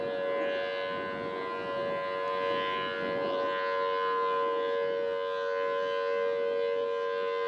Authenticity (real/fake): real